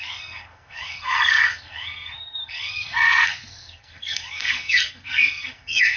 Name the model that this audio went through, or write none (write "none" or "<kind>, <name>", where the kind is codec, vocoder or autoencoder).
codec, SNAC